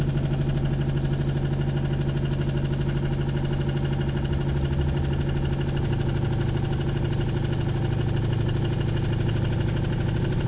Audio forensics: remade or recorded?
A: recorded